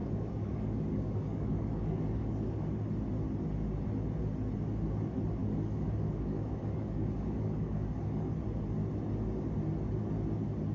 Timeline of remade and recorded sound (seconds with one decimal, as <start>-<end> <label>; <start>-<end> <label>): 0.0-2.6 remade; 2.6-5.4 recorded; 5.4-8.3 remade; 8.3-10.7 recorded